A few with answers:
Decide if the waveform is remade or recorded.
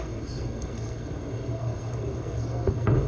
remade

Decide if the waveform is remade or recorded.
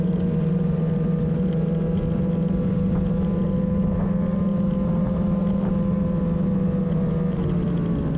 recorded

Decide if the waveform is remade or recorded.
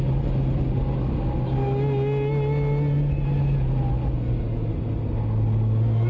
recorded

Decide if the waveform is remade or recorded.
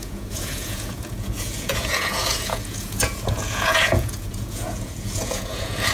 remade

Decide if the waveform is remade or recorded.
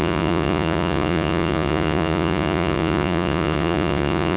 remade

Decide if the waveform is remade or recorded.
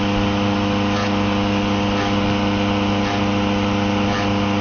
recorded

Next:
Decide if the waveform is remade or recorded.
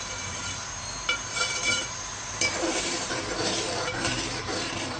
remade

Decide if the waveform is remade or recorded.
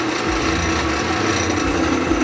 recorded